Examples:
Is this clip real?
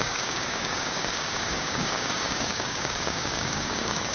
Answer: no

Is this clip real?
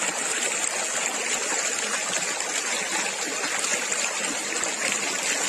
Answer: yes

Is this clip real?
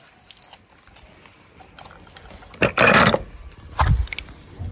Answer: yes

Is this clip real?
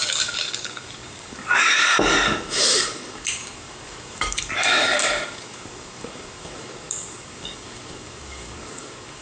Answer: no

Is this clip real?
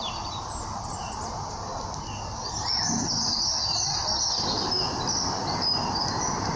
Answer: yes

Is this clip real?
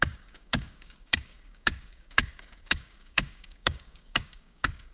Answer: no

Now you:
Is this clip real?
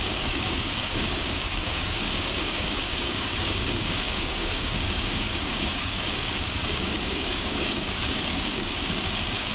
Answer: no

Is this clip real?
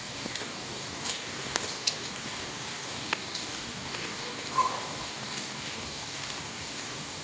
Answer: no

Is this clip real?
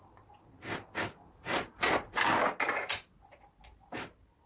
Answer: yes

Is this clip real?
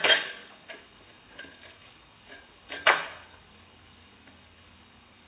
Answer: no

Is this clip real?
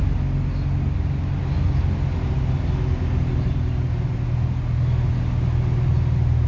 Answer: yes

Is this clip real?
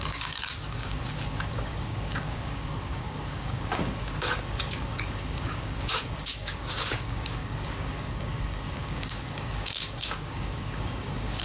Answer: no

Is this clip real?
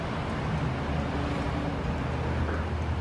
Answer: yes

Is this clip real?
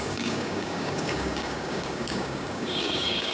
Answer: no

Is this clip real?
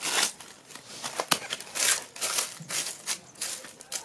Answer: yes